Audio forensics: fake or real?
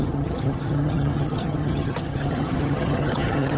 fake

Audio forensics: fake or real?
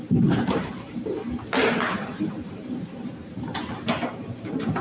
fake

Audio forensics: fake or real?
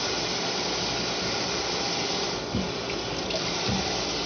real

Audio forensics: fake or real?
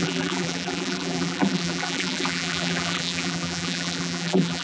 fake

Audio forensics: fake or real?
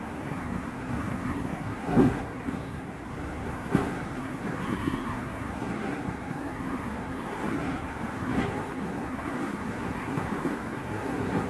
fake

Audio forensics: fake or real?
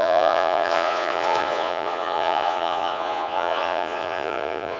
fake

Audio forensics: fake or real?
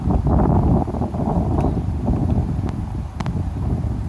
real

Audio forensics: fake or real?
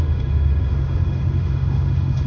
fake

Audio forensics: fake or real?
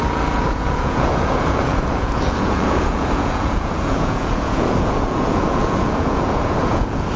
fake